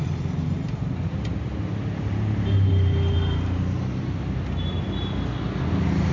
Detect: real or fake real